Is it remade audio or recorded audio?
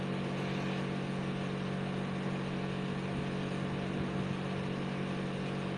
recorded